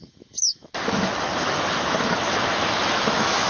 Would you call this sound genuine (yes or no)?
no